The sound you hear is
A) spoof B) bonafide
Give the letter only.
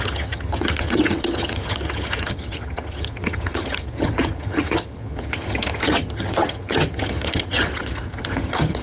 A